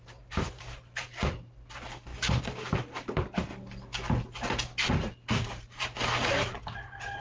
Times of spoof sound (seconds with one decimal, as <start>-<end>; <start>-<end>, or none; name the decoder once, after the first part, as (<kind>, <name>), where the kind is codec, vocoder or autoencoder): 0.0-3.5 (vocoder, BigVGAN v2); 4.9-7.2